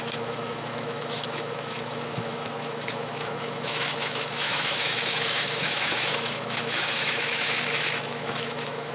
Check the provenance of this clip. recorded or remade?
remade